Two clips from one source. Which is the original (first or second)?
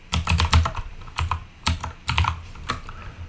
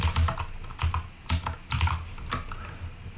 second